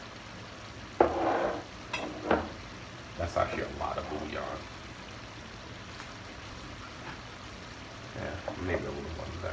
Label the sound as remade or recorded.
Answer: recorded